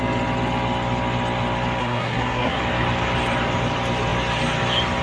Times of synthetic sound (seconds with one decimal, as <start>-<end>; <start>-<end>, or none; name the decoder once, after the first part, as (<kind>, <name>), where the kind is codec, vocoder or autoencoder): 1.8-2.6 (codec, SNAC)